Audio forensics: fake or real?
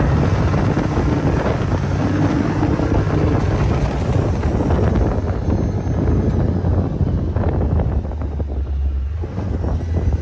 real